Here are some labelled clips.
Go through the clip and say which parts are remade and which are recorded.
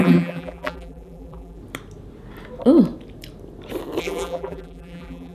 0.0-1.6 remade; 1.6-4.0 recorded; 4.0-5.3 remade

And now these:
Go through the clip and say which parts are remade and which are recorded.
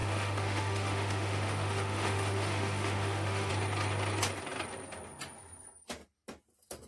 0.0-3.5 remade; 3.5-6.9 recorded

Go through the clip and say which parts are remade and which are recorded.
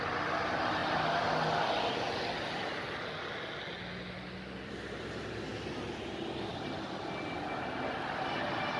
0.0-8.8 recorded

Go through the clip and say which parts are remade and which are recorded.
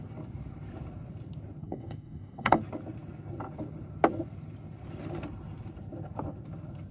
0.0-1.6 recorded; 1.6-2.6 remade; 2.6-6.9 recorded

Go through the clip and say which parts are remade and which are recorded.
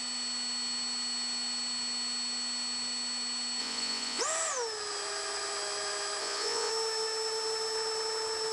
0.0-3.6 recorded; 3.6-4.2 remade; 4.2-6.2 recorded; 6.2-6.7 remade; 6.7-8.5 recorded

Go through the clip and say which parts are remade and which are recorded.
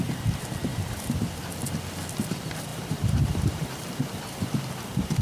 0.0-0.7 recorded; 0.7-1.4 remade; 1.4-2.7 recorded; 2.7-3.9 remade; 3.9-5.2 recorded